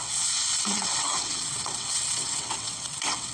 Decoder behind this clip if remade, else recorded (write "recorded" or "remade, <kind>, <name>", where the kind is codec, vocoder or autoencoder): remade, vocoder, WaveNeXt